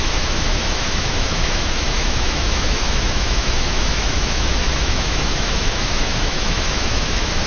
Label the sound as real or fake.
fake